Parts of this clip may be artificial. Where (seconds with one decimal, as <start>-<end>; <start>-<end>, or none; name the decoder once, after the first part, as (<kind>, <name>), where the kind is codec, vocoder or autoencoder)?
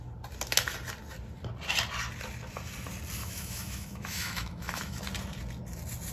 3.2-5.0 (autoencoder, DAC-VAE)